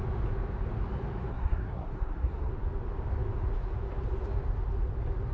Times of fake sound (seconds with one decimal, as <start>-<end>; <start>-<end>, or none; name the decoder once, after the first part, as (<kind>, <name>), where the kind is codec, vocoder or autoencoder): 1.3-2.5 (codec, SNAC)